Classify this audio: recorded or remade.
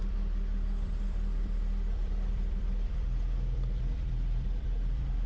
remade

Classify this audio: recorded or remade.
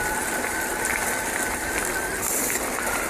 remade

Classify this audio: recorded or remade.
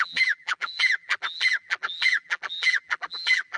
remade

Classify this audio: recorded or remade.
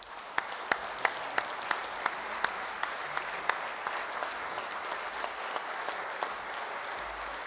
recorded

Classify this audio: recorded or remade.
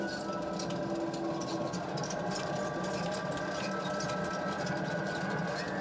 recorded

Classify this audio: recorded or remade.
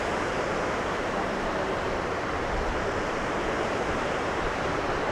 remade